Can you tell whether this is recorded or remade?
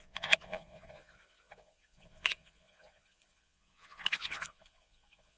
remade